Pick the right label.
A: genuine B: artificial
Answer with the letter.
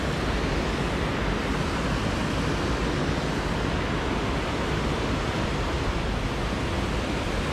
A